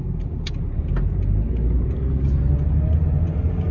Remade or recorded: recorded